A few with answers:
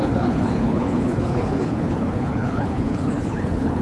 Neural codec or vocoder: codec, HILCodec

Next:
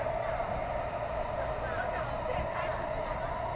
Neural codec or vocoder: none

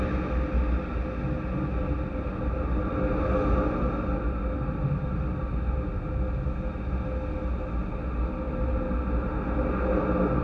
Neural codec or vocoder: none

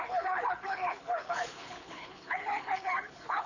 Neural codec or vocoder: codec, HILCodec